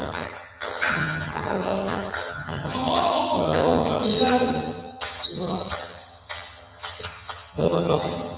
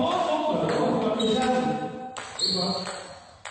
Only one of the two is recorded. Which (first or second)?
second